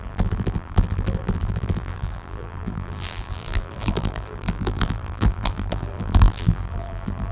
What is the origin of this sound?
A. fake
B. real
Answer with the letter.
A